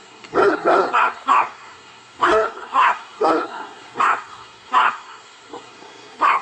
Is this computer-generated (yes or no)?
yes